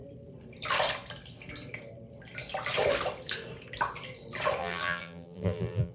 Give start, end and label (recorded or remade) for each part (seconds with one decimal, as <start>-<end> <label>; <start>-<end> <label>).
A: 0.0-4.6 recorded; 4.6-5.9 remade